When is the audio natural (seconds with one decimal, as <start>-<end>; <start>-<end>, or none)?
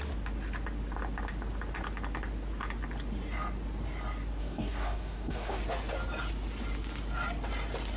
0.0-4.4; 5.6-8.0